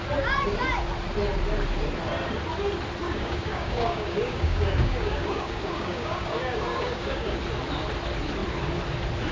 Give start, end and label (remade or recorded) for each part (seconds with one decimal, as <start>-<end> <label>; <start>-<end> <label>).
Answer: 0.0-3.0 recorded; 3.0-7.4 remade; 7.4-9.3 recorded